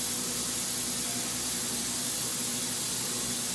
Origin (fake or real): real